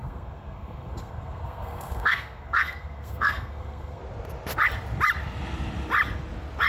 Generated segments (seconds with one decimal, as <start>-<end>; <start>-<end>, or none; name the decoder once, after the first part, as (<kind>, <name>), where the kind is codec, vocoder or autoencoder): 0.0-4.0 (codec, SNAC)